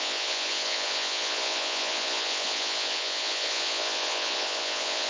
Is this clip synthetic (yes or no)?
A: yes